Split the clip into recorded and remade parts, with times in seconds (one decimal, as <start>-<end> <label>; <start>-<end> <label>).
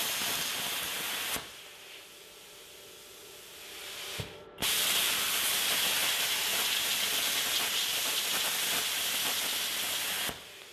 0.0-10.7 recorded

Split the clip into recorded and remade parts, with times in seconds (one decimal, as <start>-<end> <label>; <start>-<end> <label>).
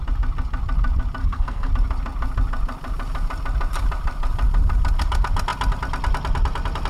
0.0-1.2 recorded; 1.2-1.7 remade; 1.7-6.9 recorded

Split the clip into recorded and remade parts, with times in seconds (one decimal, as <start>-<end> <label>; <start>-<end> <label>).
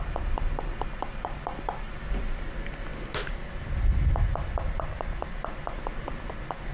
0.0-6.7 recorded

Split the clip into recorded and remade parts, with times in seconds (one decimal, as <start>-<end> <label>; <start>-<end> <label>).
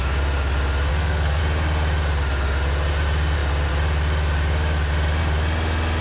0.0-0.9 recorded; 0.9-1.4 remade; 1.4-6.0 recorded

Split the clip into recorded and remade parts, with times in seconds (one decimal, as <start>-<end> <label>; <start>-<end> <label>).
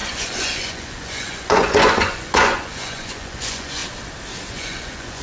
0.0-3.8 remade; 3.8-4.5 recorded; 4.5-5.2 remade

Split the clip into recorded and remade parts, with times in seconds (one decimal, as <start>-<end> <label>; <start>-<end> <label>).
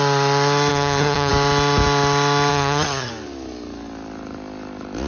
0.0-0.7 recorded; 0.7-1.3 remade; 1.3-2.5 recorded; 2.5-3.1 remade; 3.1-5.1 recorded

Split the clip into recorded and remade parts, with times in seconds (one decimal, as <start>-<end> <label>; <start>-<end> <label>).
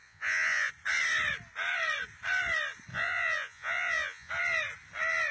0.0-0.7 remade; 0.7-2.9 recorded; 2.9-4.3 remade; 4.3-5.3 recorded